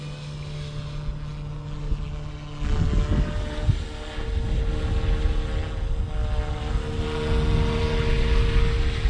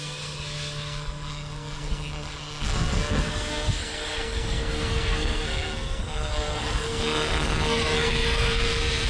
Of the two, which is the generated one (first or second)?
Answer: second